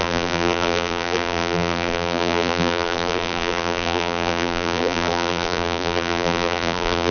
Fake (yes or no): yes